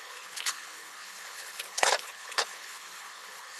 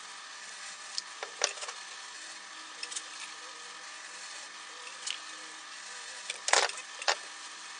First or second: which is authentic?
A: second